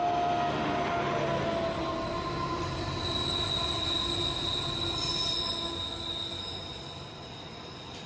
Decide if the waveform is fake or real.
real